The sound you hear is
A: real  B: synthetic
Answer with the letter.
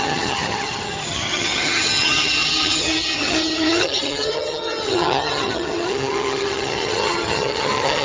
B